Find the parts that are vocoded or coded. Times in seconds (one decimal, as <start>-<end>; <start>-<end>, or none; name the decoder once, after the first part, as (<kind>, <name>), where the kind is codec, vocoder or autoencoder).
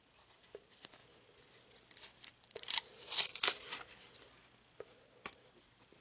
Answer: 0.0-1.0 (vocoder, BigVGAN v2); 2.3-3.3; 5.5-6.0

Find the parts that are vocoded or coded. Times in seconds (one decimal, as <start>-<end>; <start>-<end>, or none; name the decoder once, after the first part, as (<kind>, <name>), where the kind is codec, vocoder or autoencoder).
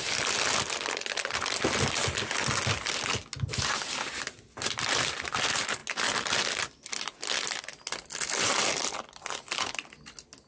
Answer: none